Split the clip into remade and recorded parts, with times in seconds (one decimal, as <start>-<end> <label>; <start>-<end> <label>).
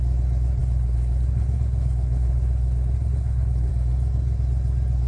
0.0-0.6 recorded; 0.6-3.7 remade; 3.7-5.1 recorded